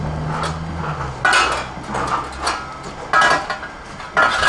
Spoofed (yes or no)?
no